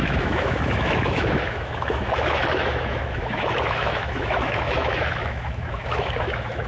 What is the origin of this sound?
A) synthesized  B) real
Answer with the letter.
A